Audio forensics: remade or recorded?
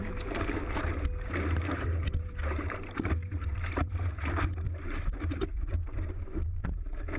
remade